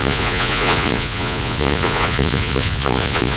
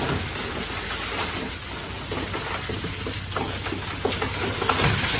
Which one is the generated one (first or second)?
first